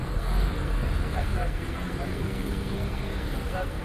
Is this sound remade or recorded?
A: remade